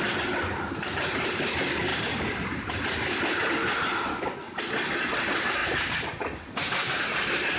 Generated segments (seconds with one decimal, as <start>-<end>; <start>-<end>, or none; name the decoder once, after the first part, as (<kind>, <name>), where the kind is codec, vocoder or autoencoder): 1.9-3.1 (vocoder, BigVGAN v2); 5.6-7.6

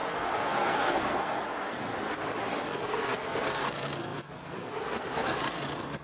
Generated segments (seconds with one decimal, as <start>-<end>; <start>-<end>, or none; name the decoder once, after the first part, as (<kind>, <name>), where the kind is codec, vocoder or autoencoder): 0.0-1.9 (codec, SNAC); 2.7-6.0

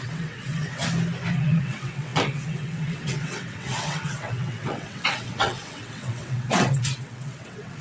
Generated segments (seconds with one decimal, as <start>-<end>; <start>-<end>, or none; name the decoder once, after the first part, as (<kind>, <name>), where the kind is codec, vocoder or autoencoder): 0.0-0.8 (vocoder, WaveNeXt); 1.3-7.8

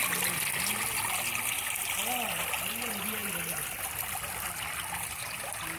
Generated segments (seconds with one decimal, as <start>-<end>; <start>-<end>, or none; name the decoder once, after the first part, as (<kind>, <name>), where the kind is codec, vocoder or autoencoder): none

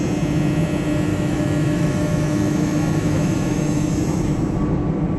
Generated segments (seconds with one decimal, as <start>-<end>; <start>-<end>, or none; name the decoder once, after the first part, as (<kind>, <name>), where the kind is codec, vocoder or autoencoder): 1.1-3.9 (autoencoder, DAC-VAE)

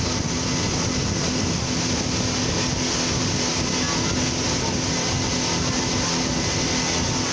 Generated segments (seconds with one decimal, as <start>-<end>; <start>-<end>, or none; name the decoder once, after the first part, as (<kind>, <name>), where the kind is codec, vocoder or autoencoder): none

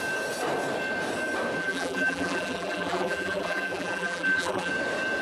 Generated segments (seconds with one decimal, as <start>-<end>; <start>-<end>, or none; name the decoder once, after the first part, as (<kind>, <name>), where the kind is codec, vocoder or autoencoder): 1.6-4.7 (vocoder, BigVGAN v2)